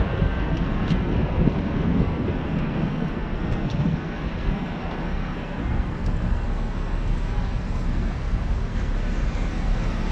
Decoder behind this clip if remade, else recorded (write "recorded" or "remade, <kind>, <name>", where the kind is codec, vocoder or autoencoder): remade, codec, SNAC